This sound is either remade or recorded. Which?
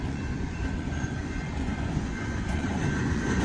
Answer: remade